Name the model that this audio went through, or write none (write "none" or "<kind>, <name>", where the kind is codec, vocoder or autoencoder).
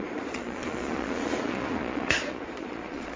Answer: vocoder, Vocos